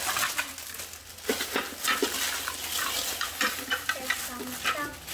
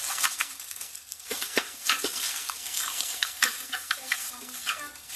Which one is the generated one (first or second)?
second